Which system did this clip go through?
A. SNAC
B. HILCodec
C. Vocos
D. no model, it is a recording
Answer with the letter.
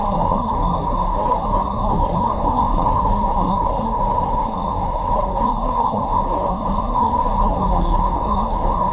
A